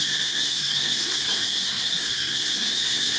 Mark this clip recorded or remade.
remade